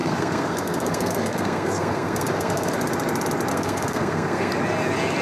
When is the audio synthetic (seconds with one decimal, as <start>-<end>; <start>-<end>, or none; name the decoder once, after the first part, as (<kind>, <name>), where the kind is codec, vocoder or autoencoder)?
0.0-2.7 (codec, SNAC); 3.5-4.5